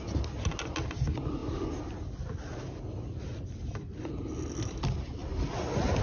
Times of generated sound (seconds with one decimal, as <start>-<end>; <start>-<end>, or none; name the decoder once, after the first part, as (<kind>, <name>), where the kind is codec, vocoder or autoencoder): none